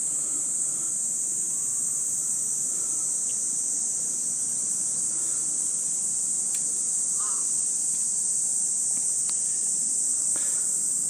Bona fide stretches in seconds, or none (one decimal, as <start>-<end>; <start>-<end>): 3.3-7.8; 8.5-10.3